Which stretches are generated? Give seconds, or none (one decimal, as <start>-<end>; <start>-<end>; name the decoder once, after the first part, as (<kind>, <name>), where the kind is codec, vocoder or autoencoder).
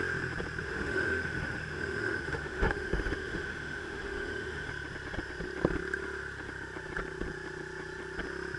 0.6-4.7 (autoencoder, DAC-VAE)